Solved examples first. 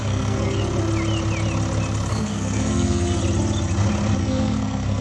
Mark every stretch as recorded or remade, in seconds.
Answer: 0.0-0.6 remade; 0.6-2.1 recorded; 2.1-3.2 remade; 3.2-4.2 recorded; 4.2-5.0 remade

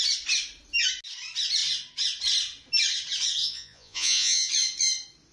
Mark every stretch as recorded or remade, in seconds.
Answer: 0.0-3.4 recorded; 3.4-4.5 remade; 4.5-5.3 recorded

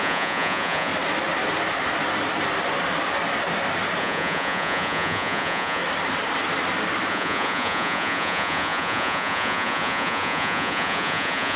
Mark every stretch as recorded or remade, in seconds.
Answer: 0.0-0.9 remade; 0.9-4.0 recorded; 4.0-5.8 remade; 5.8-7.1 recorded; 7.1-11.6 remade